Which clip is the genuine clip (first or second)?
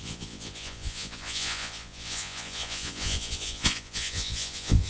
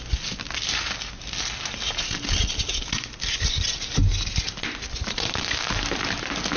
second